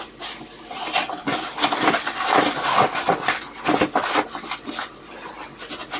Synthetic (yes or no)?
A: no